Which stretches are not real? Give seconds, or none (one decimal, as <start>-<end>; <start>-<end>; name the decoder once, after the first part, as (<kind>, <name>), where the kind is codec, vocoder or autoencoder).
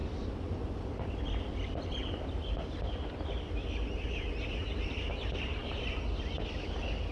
0.0-1.2 (vocoder, BigVGAN v2); 4.6-5.1